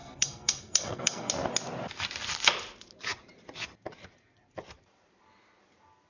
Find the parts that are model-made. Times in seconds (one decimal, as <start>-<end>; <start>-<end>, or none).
0.0-1.3